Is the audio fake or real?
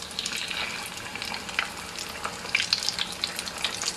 real